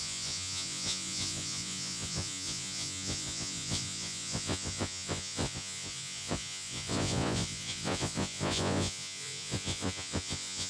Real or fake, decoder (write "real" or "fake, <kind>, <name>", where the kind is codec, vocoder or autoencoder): fake, vocoder, Vocos